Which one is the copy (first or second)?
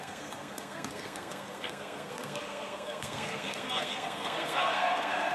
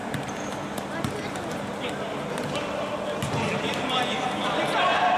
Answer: first